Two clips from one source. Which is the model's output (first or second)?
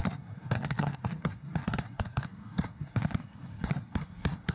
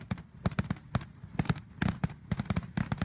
first